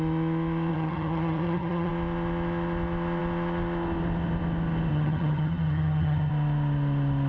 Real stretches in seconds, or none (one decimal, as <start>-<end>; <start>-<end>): 0.0-0.7; 1.9-4.9; 6.3-7.3